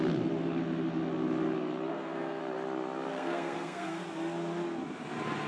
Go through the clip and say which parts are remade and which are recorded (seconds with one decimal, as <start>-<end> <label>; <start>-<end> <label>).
0.0-1.9 recorded; 1.9-2.4 remade; 2.4-3.1 recorded; 3.1-4.0 remade; 4.0-5.5 recorded